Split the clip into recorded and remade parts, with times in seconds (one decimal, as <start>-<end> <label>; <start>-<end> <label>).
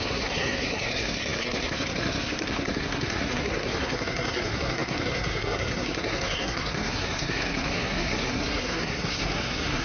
0.0-9.8 remade